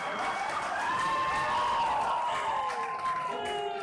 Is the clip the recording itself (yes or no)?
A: yes